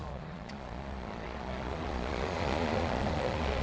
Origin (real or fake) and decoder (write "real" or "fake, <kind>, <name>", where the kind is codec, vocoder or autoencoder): fake, vocoder, Vocos